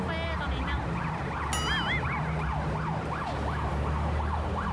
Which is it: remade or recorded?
recorded